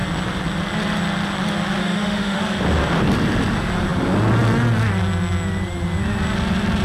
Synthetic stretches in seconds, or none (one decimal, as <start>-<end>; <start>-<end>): 1.8-2.4